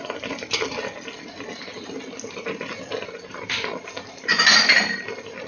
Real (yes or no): yes